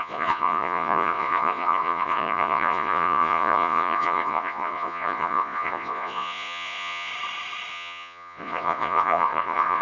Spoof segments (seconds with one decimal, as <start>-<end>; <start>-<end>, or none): 0.0-7.1; 7.7-9.8